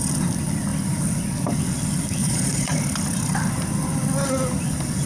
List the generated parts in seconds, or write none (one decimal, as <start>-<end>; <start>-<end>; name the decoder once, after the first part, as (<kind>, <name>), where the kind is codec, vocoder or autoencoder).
2.2-2.8 (vocoder, Vocos)